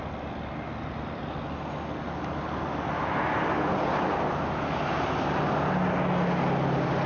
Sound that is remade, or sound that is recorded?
recorded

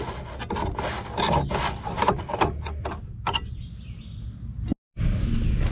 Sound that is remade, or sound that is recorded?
recorded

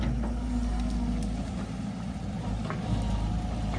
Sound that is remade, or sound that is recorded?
recorded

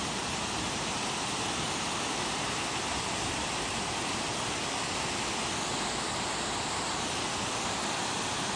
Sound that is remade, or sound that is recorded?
recorded